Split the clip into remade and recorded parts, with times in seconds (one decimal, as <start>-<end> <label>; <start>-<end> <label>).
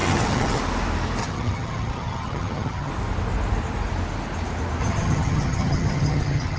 0.0-0.6 remade; 0.6-1.2 recorded; 1.2-2.9 remade; 2.9-4.8 recorded; 4.8-6.6 remade